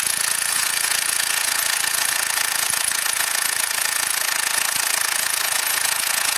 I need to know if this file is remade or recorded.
remade